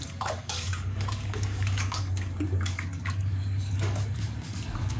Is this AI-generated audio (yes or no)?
yes